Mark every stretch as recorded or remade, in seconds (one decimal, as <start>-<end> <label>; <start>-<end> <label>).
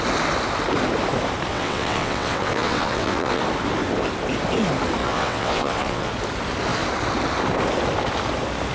0.0-1.5 recorded; 1.5-3.4 remade; 3.4-5.0 recorded; 5.0-6.1 remade; 6.1-8.7 recorded